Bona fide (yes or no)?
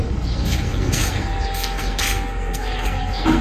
no